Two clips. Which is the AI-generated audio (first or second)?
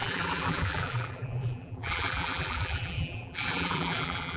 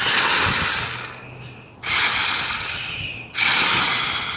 first